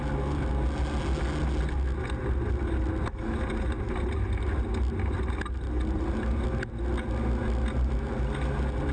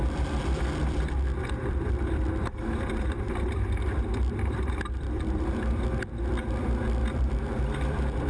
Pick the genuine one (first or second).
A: first